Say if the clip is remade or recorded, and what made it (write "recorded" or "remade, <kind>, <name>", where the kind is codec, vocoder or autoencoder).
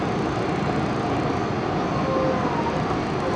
recorded